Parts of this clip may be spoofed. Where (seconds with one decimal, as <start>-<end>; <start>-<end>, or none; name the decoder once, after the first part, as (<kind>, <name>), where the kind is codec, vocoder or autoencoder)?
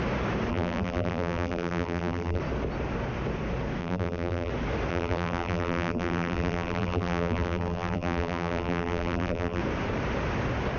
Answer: 0.5-2.4 (vocoder, BigVGAN v2); 3.8-4.5; 4.9-9.6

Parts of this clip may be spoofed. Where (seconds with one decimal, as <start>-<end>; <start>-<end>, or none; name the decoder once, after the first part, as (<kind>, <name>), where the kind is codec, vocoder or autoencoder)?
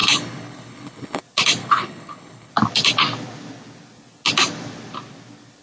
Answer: 0.0-1.2 (codec, HILCodec); 1.6-2.5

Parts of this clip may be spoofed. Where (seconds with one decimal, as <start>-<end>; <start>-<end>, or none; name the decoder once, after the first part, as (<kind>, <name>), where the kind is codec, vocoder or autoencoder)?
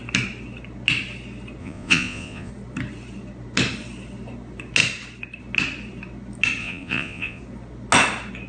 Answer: 1.6-2.5 (vocoder, Vocos); 6.6-7.4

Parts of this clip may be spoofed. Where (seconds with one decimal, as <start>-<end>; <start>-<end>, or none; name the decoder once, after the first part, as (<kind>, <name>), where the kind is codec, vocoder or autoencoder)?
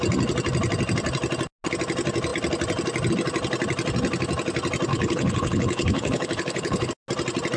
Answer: 4.9-6.9 (codec, HILCodec)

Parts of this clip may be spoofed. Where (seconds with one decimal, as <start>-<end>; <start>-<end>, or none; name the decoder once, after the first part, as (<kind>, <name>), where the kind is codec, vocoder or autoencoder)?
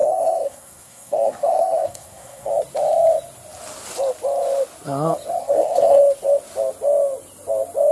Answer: 0.0-2.5 (codec, SNAC); 5.4-6.0